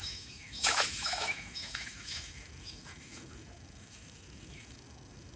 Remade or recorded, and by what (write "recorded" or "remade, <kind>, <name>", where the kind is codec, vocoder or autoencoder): remade, autoencoder, DAC-VAE